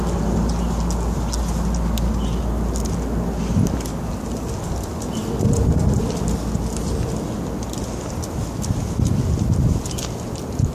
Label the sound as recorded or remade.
recorded